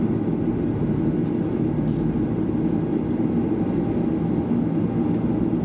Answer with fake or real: real